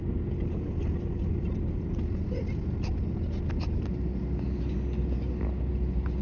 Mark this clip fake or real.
real